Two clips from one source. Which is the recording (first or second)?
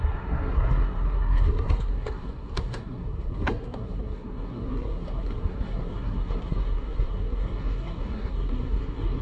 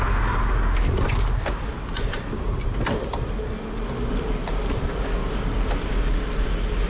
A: second